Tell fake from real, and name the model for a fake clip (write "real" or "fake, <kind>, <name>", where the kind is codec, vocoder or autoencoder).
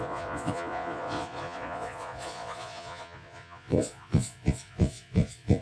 fake, vocoder, Vocos